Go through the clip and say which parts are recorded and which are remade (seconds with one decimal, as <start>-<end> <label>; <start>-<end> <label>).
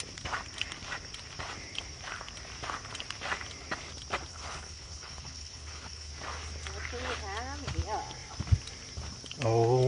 0.0-4.3 recorded; 4.3-6.1 remade; 6.1-9.9 recorded